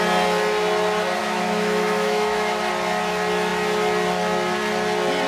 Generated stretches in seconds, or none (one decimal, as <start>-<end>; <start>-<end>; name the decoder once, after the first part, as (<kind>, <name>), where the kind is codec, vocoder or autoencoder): 1.2-2.7 (autoencoder, DAC-VAE)